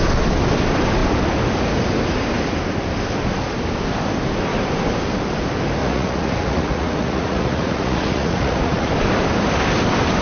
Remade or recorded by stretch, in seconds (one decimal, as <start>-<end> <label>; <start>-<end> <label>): 0.0-5.8 recorded; 5.8-8.9 remade; 8.9-10.2 recorded